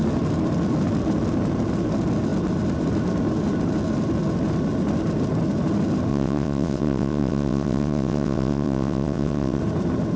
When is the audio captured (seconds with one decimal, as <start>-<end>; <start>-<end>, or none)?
0.0-6.1; 9.6-10.2